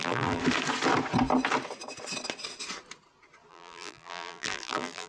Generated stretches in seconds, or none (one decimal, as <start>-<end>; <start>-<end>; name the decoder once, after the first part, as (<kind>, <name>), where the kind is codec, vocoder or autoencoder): 0.0-0.4 (vocoder, BigVGAN v2); 3.5-5.1